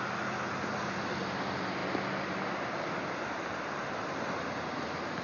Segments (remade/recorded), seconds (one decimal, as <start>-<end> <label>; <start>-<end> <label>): 0.0-5.2 recorded